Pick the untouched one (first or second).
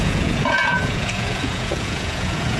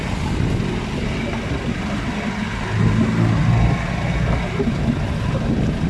second